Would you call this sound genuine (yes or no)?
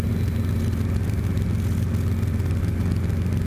yes